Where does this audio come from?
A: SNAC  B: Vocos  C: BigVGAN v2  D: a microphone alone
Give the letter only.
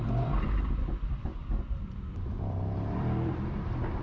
C